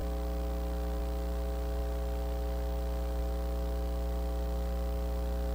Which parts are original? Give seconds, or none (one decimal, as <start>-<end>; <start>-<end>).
0.0-5.5